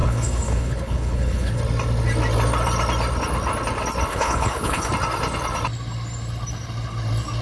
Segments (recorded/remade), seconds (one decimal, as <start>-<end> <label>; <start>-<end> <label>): 0.0-1.6 remade; 1.6-4.1 recorded; 4.1-4.9 remade; 4.9-7.4 recorded